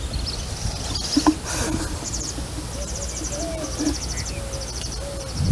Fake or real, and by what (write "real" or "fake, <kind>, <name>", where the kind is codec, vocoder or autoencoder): real